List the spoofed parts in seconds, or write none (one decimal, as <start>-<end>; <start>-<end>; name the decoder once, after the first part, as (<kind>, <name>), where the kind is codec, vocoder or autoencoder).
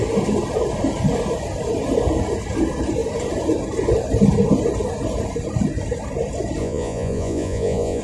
6.6-8.0 (vocoder, Vocos)